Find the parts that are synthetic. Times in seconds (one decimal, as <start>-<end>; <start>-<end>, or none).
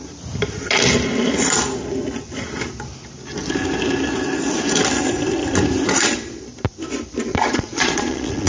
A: 7.3-8.5